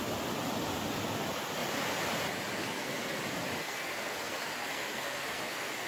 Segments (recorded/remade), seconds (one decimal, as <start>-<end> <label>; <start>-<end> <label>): 0.0-2.6 recorded; 2.6-3.2 remade; 3.2-3.6 recorded; 3.6-5.9 remade